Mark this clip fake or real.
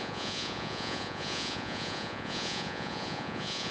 fake